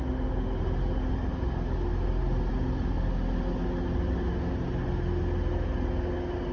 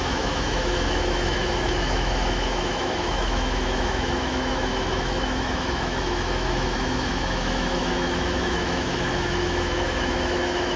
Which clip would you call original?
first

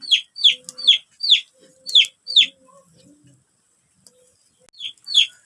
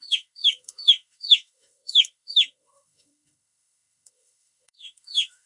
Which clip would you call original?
first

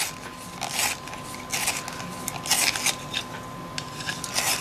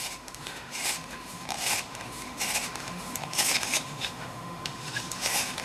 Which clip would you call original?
first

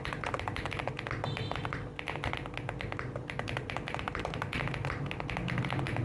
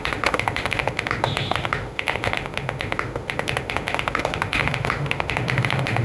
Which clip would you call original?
first